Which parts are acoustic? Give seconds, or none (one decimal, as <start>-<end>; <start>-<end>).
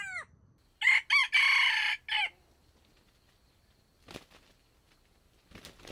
0.0-5.9